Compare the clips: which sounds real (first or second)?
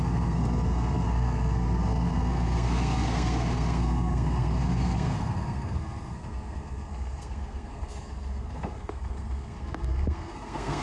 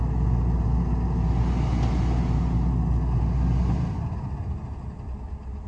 second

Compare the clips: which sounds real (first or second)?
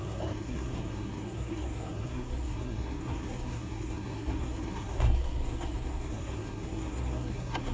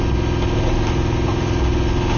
second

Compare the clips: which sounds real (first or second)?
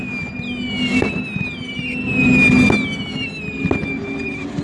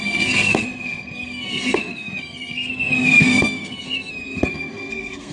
first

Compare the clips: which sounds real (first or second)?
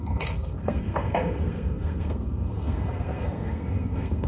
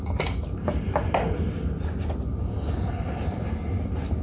second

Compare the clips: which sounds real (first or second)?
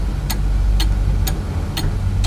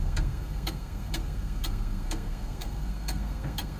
first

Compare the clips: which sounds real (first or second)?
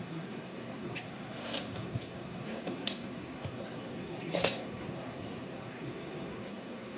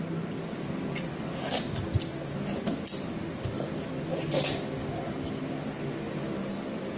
second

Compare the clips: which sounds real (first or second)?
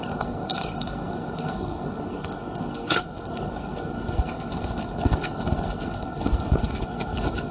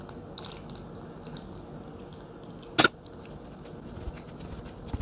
second